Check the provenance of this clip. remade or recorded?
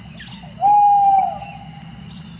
recorded